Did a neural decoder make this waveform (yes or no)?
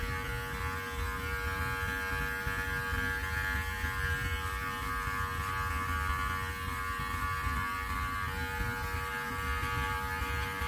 no